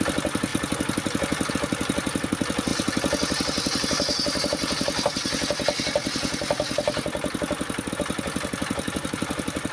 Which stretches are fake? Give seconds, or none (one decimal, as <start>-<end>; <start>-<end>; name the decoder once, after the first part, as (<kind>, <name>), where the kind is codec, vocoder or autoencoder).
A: none